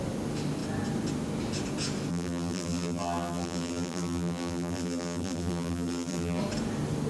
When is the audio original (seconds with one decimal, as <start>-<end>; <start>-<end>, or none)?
0.0-2.1; 6.4-7.1